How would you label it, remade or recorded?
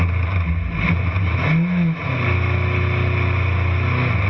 recorded